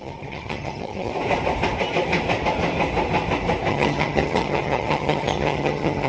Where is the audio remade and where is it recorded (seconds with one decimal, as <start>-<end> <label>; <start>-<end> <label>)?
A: 0.0-1.1 remade; 1.1-3.7 recorded; 3.7-6.1 remade